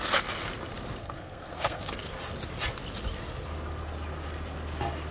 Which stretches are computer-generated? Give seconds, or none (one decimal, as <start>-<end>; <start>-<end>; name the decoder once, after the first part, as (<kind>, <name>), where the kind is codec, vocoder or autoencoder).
1.0-1.9 (codec, SNAC)